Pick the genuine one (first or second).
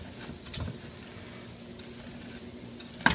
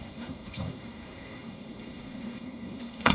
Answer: first